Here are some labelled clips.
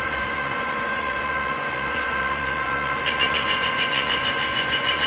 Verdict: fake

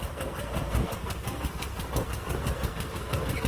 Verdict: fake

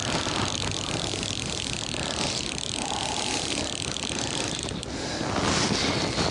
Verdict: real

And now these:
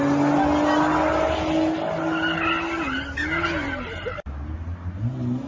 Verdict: real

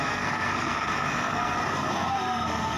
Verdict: fake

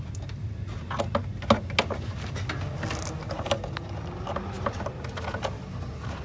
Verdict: real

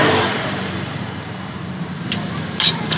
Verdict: fake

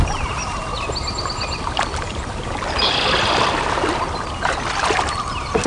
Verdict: real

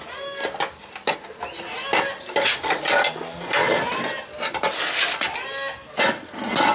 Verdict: real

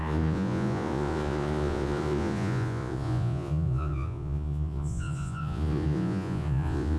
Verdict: fake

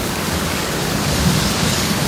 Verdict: fake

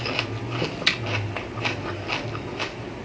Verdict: real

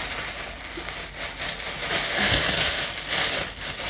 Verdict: real